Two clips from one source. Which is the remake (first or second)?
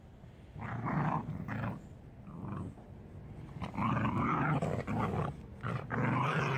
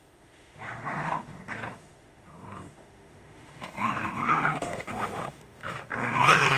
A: second